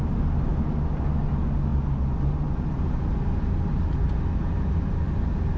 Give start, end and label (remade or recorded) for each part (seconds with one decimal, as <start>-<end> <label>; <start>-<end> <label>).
0.0-5.6 recorded